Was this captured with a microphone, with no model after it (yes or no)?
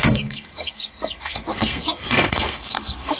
no